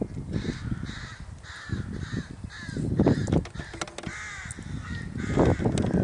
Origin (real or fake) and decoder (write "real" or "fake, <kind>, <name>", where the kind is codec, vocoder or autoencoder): real